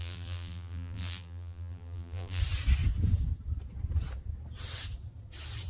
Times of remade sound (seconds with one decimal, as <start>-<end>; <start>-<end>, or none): 0.0-2.4